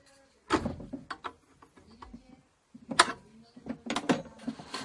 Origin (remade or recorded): recorded